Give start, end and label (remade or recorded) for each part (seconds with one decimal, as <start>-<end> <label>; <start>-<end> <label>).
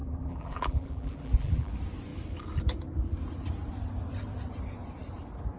0.0-1.7 remade; 1.7-5.6 recorded